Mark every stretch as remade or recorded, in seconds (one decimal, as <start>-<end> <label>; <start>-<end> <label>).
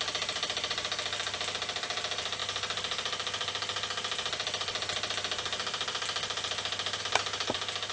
0.0-7.9 recorded